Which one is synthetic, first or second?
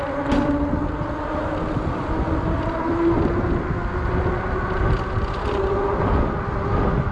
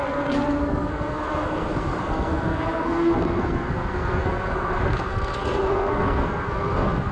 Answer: second